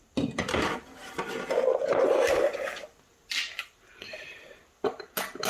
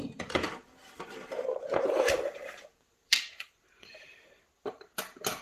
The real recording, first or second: first